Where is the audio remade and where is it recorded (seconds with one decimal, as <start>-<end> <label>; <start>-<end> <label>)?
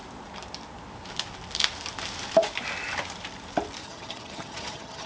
0.0-3.8 recorded; 3.8-5.1 remade